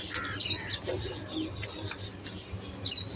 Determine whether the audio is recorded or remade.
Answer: recorded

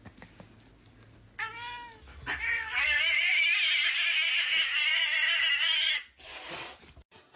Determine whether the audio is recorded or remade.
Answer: recorded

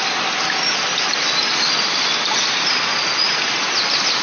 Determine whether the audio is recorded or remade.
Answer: recorded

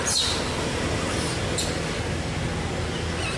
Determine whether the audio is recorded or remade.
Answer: recorded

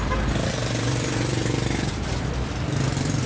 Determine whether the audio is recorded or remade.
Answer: remade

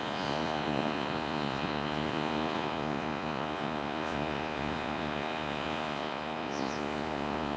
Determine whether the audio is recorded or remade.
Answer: remade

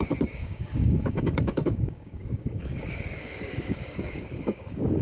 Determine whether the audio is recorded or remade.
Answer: remade